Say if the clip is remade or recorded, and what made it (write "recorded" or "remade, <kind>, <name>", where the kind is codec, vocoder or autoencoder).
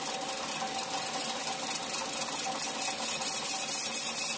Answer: recorded